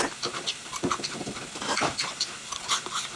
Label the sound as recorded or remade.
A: recorded